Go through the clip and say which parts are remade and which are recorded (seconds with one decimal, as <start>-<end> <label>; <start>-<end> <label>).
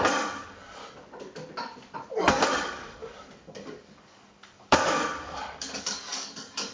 0.0-0.8 remade; 0.8-2.2 recorded; 2.2-6.7 remade